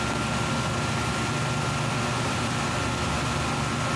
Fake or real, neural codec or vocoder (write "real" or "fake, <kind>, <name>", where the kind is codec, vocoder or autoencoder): real